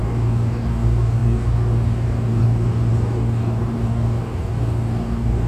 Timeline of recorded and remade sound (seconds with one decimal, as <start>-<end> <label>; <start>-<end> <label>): 0.0-5.5 remade